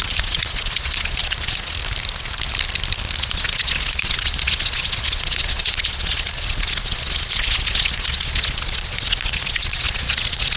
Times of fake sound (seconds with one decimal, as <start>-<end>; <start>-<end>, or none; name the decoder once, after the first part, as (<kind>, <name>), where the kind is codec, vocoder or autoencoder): 0.0-1.8 (vocoder, Vocos); 3.2-10.6